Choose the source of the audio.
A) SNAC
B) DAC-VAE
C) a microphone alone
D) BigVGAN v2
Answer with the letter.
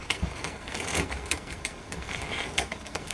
A